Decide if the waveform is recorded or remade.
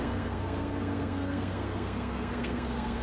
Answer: remade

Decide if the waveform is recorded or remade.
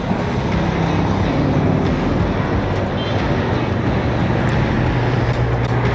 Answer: recorded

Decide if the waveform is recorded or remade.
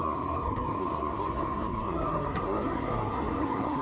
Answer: remade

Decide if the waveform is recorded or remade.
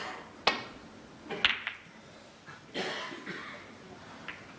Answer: recorded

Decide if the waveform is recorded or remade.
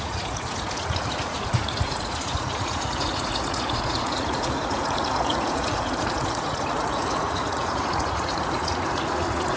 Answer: remade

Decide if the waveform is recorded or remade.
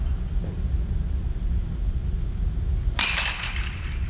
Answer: recorded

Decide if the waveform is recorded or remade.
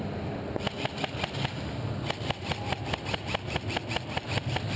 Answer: recorded